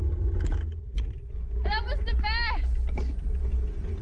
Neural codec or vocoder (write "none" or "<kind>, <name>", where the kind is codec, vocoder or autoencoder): none